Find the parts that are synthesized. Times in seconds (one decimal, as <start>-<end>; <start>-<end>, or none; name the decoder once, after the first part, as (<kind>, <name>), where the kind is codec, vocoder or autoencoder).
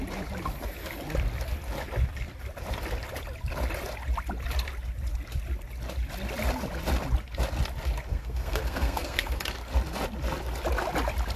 8.1-9.4 (codec, SNAC)